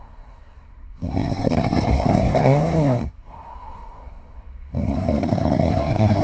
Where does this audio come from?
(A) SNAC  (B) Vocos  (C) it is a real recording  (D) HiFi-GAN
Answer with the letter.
A